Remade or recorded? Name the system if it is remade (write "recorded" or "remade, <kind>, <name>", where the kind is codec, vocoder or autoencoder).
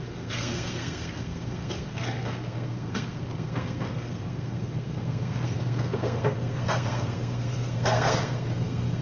remade, codec, SNAC